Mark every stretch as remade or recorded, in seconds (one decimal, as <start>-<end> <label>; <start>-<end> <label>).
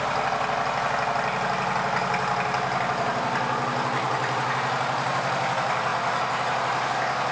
0.0-7.3 recorded